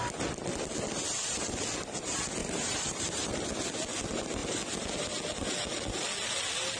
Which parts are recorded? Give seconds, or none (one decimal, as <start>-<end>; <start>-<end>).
0.0-2.4; 3.3-6.8